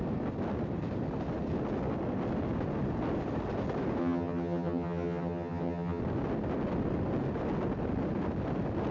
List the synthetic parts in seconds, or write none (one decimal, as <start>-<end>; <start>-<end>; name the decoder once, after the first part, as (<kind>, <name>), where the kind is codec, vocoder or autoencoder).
4.0-6.0 (vocoder, HiFi-GAN)